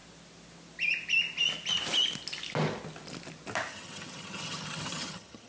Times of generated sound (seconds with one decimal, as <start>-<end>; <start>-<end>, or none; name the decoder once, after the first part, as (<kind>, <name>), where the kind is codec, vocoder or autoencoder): 3.7-5.5 (vocoder, HiFi-GAN)